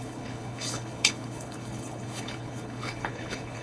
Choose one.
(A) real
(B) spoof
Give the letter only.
B